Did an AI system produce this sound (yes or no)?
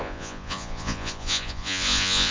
yes